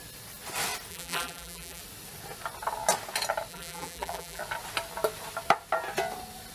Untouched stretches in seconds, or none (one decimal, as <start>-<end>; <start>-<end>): 0.0-0.9; 1.8-3.5; 4.4-6.5